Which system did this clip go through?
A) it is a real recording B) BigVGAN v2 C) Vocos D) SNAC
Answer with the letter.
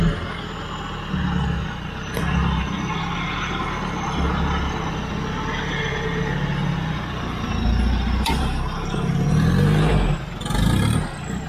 A